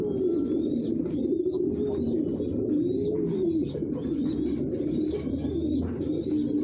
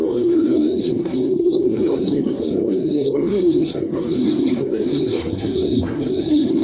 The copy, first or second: second